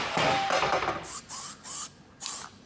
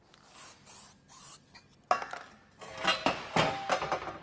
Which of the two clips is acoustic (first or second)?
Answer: second